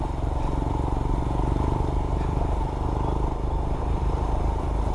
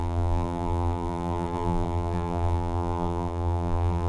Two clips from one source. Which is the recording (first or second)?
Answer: first